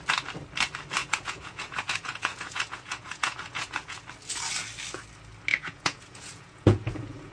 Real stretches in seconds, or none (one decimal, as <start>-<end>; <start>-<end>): 0.0-1.0; 4.0-5.5